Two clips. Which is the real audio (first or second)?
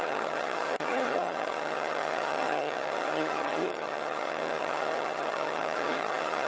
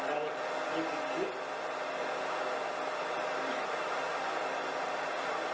second